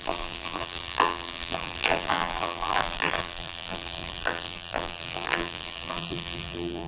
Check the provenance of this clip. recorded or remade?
remade